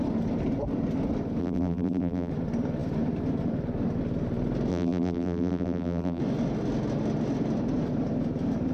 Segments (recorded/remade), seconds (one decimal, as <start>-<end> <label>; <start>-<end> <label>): 0.0-1.4 recorded; 1.4-2.3 remade; 2.3-4.7 recorded; 4.7-6.2 remade; 6.2-8.7 recorded